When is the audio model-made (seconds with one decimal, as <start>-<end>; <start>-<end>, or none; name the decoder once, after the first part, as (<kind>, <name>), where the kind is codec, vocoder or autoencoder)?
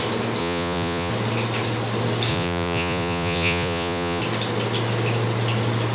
0.4-1.1 (vocoder, Vocos); 2.3-4.2